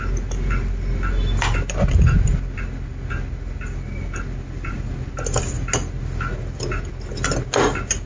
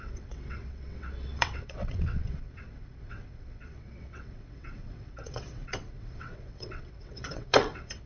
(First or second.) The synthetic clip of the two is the second